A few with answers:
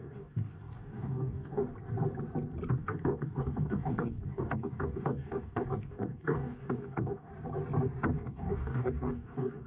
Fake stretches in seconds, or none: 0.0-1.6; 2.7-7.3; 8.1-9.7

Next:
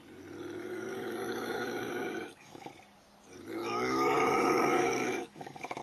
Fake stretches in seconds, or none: 0.6-2.7; 3.6-5.8

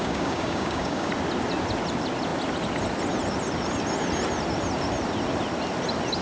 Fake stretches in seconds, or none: 0.0-1.1